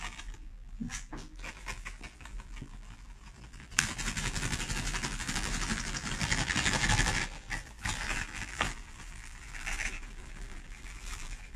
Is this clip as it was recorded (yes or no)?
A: no